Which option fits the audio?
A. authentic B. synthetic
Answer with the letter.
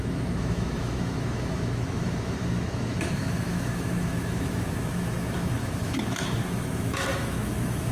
B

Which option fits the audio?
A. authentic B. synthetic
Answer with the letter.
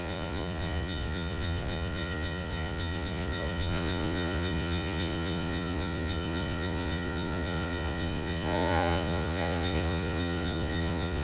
B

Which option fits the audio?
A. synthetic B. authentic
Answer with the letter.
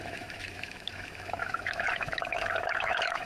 A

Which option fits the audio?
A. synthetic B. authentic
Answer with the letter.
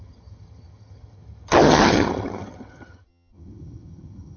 A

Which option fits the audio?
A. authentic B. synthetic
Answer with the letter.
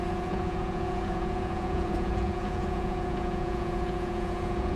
B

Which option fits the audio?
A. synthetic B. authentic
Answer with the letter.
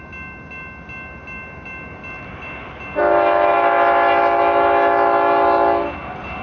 B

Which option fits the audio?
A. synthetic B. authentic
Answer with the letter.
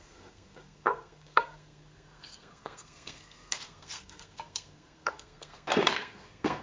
A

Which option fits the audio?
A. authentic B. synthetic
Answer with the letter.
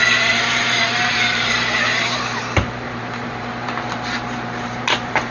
B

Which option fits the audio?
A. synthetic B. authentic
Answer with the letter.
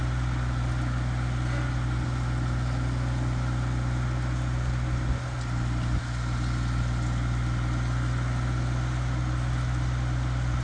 B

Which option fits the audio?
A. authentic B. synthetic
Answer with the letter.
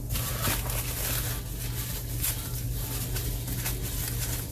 A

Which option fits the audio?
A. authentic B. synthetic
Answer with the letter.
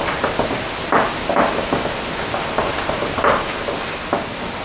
A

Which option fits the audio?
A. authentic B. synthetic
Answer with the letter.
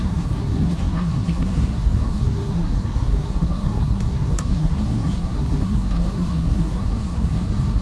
B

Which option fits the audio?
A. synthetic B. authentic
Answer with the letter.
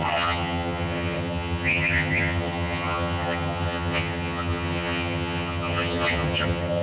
A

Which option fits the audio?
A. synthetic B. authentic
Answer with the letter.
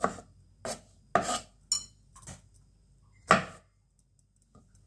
B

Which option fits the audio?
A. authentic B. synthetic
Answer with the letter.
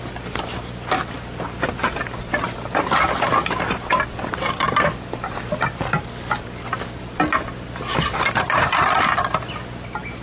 A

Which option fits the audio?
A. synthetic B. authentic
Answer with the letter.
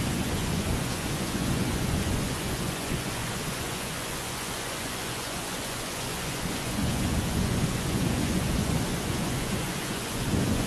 A